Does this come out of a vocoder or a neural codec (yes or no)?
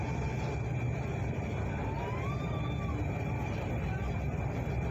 no